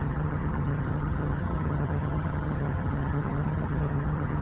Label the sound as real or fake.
fake